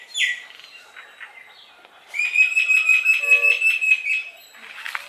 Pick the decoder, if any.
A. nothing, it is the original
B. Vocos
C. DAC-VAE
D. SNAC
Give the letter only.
A